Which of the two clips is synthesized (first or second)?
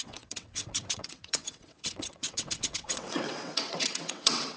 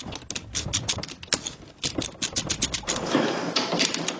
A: first